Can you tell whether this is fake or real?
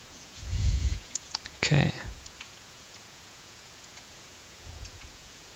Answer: fake